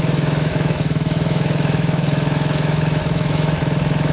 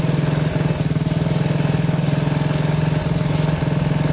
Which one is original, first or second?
second